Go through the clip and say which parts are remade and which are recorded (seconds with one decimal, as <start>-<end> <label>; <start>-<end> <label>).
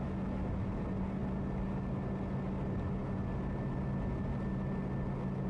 0.0-5.5 recorded